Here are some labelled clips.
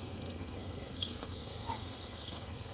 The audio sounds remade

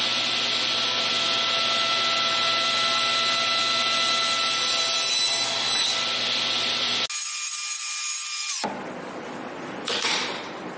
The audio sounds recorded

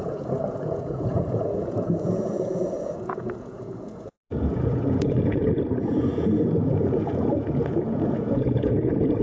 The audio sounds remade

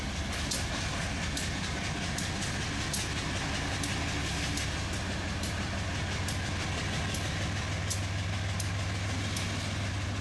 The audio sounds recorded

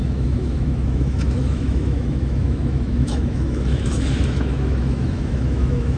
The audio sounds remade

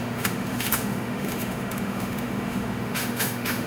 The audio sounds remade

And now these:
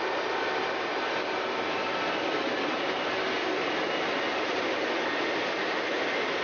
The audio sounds recorded